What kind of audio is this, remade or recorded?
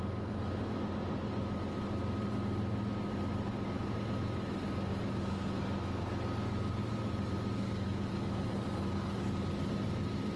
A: recorded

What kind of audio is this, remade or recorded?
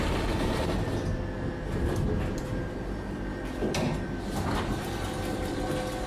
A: recorded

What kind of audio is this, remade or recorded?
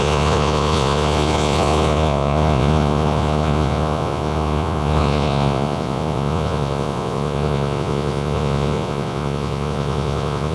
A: remade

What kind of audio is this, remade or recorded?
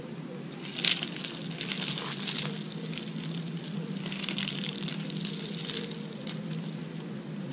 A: recorded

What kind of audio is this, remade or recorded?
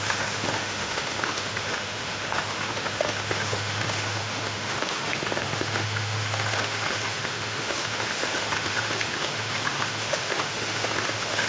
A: remade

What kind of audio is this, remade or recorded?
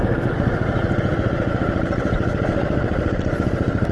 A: recorded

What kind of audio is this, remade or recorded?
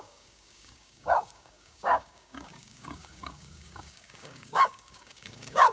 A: remade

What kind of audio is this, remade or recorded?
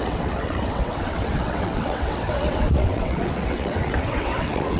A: remade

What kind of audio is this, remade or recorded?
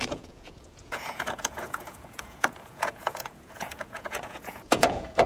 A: remade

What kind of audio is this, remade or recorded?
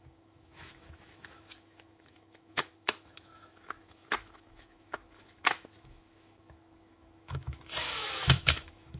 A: remade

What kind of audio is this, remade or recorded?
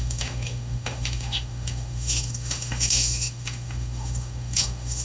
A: remade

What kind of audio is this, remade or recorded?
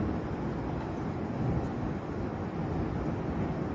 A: recorded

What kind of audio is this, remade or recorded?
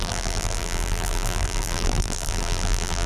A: remade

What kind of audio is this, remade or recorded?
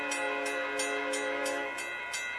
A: recorded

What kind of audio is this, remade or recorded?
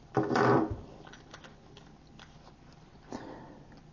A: recorded